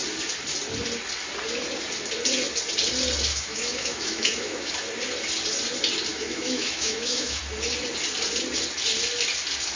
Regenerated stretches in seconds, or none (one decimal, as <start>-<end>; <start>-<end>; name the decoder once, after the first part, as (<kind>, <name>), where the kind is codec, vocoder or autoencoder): 3.3-4.7 (autoencoder, DAC-VAE); 6.1-7.4

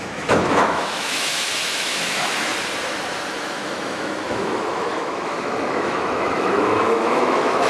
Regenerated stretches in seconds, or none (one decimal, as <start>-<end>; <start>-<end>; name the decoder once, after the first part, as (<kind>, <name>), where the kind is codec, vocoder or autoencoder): 0.0-2.5 (autoencoder, DAC-VAE); 3.4-7.7